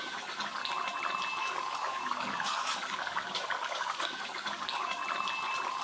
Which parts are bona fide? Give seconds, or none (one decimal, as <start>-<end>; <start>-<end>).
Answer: 0.6-1.4; 5.0-5.8